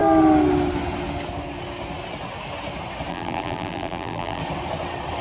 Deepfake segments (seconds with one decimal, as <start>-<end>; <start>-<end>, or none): 3.1-4.4